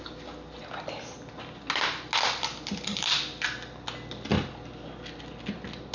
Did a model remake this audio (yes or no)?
no